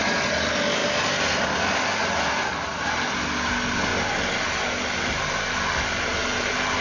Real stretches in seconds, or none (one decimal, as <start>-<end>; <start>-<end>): 0.0-6.8